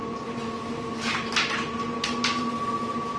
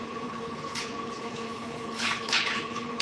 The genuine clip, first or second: first